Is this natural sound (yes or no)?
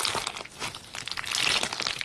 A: yes